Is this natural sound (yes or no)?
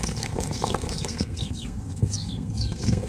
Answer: no